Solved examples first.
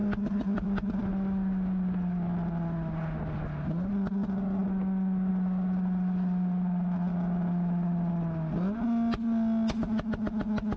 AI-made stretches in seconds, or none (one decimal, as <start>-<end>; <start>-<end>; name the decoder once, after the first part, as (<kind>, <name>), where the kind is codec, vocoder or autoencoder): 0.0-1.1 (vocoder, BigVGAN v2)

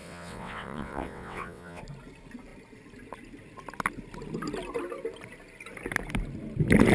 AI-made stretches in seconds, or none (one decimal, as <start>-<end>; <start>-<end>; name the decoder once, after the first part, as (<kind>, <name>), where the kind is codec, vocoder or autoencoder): 0.0-1.8 (vocoder, WaveNeXt)

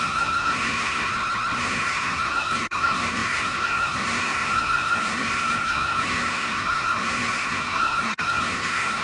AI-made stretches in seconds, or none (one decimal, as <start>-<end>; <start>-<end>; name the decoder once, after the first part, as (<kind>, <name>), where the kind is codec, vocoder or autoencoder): 0.0-1.1 (codec, SNAC); 1.6-9.0